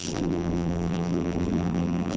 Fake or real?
fake